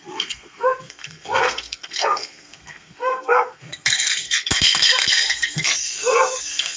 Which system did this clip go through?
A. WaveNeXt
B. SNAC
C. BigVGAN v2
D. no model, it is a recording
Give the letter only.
B